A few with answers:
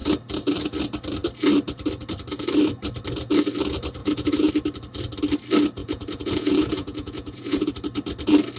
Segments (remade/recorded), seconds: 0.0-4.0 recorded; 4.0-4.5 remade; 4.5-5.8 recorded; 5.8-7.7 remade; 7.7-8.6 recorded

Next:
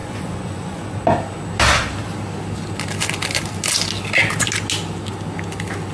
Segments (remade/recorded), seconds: 0.0-1.0 remade; 1.0-5.9 recorded

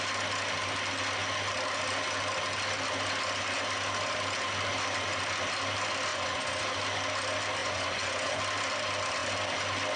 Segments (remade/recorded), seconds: 0.0-6.1 recorded; 6.1-6.6 remade; 6.6-7.6 recorded; 7.6-8.4 remade; 8.4-10.0 recorded